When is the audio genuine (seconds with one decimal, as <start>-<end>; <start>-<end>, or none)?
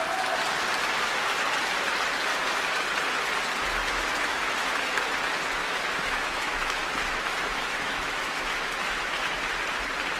0.0-2.3; 2.8-3.8; 5.1-5.6; 9.4-10.2